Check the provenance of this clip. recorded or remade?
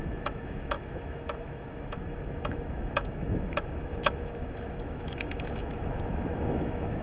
remade